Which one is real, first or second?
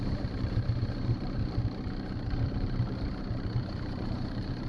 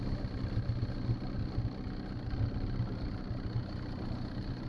second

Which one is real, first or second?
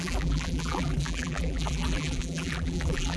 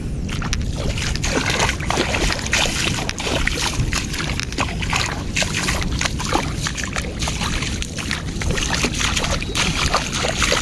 second